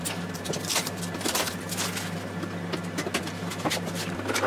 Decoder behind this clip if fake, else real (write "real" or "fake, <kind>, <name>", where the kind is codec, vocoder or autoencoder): real